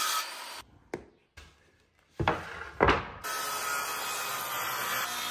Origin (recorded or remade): recorded